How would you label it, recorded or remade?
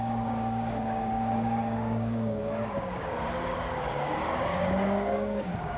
remade